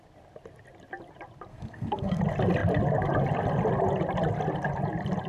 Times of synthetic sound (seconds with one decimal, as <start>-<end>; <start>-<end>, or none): 1.5-2.2